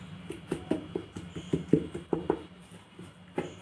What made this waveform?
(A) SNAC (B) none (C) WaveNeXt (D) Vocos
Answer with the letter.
B